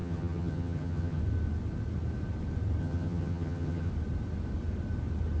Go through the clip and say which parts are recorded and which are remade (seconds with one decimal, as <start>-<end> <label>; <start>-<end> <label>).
0.0-1.2 remade; 1.2-2.8 recorded; 2.8-3.9 remade; 3.9-5.4 recorded

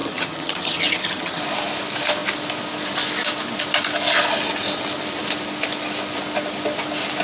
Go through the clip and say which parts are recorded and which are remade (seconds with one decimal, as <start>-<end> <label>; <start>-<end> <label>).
0.0-1.4 remade; 1.4-7.2 recorded

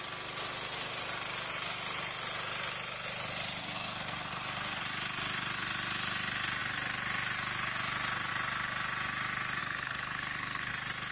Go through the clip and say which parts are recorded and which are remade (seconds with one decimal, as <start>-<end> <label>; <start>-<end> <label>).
0.0-3.6 recorded; 3.6-4.8 remade; 4.8-9.6 recorded; 9.6-10.7 remade; 10.7-11.1 recorded

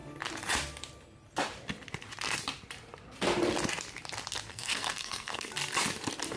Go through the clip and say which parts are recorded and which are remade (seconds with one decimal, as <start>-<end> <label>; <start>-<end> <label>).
0.0-4.5 recorded; 4.5-5.5 remade; 5.5-6.4 recorded